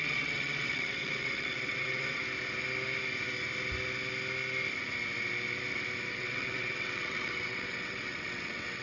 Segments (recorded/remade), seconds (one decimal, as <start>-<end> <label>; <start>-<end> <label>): 0.0-2.2 remade; 2.2-6.1 recorded; 6.1-8.8 remade